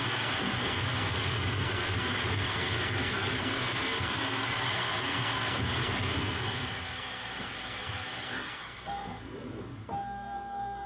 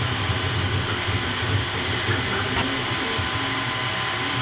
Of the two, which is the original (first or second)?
second